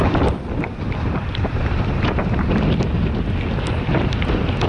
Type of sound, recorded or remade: recorded